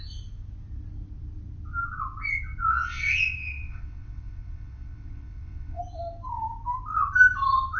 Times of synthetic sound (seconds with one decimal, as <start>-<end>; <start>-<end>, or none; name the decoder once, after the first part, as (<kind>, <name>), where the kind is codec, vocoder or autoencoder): 2.7-5.8 (vocoder, WaveNeXt)